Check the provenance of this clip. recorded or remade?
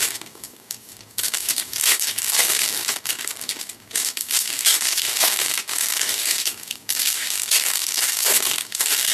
remade